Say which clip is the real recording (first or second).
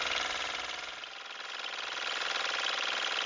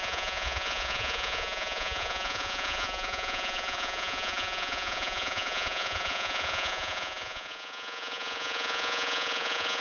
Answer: first